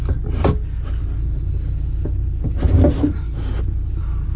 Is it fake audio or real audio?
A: real